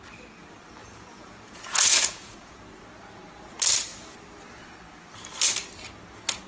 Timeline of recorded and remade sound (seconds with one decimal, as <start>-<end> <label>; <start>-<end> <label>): 0.0-0.8 recorded; 0.8-2.6 remade; 2.6-6.5 recorded